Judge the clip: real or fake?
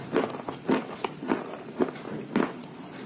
real